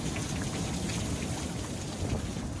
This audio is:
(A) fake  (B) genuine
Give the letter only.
B